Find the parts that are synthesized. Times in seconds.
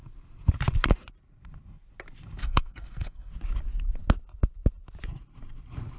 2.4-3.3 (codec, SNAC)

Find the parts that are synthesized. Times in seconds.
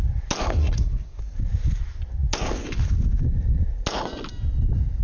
0.6-1.2 (codec, SNAC)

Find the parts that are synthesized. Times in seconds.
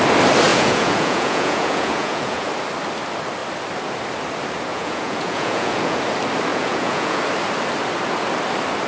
0.5-2.5 (vocoder, Vocos); 4.7-6.0; 6.5-7.2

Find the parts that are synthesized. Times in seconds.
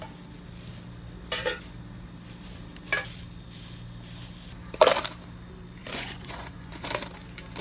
5.8-6.9 (vocoder, Vocos)